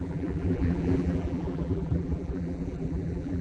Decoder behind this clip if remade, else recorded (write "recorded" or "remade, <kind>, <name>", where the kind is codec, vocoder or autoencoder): remade, vocoder, BigVGAN v2